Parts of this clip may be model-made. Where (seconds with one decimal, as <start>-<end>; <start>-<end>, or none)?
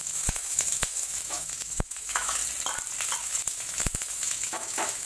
0.0-2.4; 3.2-5.1